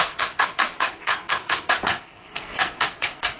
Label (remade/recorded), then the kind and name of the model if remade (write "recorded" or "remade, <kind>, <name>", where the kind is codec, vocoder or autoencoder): remade, codec, SNAC